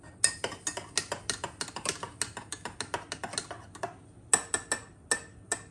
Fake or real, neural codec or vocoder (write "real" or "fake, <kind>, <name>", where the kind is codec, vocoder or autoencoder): real